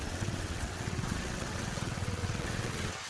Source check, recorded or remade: remade